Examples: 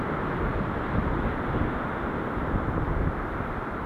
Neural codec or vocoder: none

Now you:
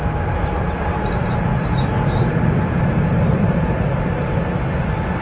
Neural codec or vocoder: none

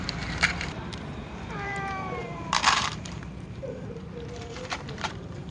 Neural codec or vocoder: vocoder, BigVGAN v2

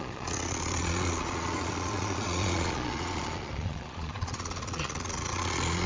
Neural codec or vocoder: vocoder, Vocos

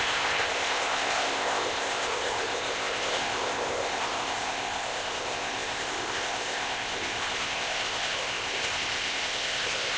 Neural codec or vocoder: codec, ZipCodec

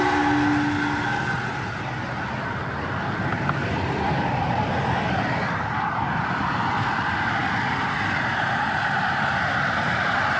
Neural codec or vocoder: none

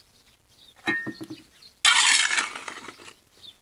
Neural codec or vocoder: none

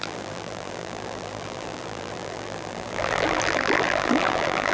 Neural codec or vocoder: vocoder, BigVGAN v2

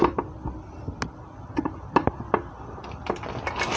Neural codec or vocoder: none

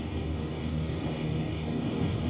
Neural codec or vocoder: codec, DAC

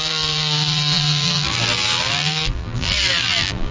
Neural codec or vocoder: vocoder, BigVGAN v2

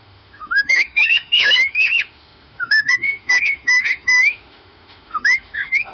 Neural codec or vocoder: autoencoder, DAC-VAE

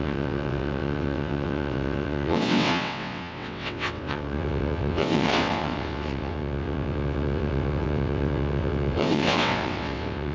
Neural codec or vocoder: vocoder, WaveNeXt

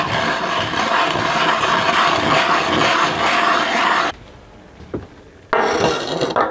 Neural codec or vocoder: none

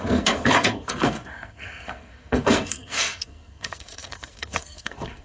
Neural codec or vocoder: codec, SNAC